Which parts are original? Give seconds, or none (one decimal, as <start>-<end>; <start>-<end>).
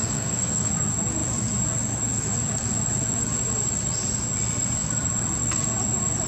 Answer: 0.7-6.3